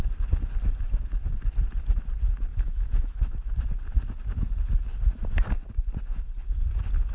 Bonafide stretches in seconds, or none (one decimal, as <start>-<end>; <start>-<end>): 0.0-2.5; 3.2-7.1